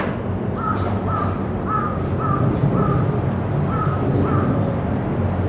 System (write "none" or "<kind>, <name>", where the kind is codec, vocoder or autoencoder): none